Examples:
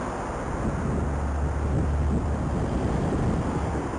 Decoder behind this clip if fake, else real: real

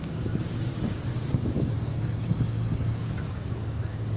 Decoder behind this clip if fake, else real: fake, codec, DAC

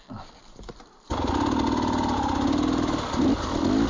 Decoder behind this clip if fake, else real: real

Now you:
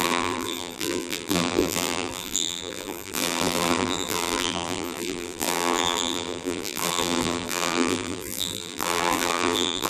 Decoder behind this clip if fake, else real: fake, vocoder, BigVGAN v2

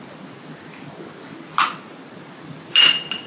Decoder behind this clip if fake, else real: real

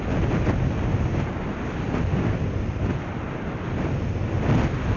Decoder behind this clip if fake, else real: real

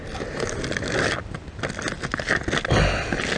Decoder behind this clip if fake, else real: real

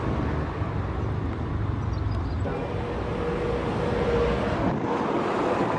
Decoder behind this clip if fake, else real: real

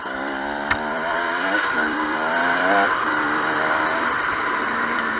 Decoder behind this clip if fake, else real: fake, vocoder, BigVGAN v2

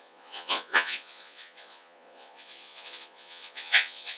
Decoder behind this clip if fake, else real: fake, vocoder, Vocos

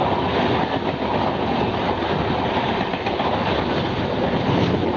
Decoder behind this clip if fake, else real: real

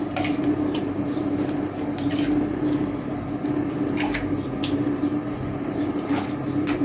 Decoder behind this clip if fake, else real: real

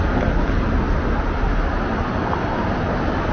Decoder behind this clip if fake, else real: real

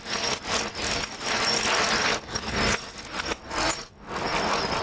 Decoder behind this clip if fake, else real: real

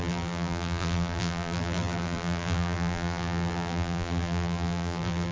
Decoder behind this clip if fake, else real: fake, vocoder, BigVGAN v2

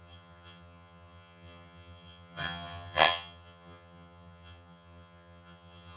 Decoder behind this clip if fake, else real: fake, vocoder, HiFi-GAN